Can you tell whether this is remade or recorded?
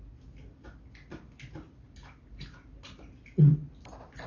recorded